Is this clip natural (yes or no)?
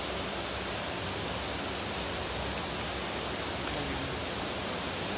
yes